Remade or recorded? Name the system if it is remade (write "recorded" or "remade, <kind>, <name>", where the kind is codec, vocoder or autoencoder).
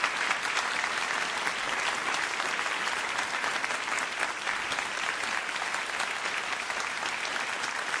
recorded